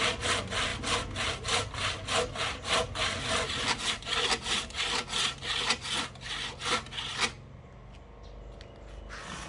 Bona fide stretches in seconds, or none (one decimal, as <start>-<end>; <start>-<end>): 0.0-9.5